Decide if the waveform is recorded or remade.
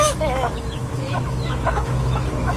remade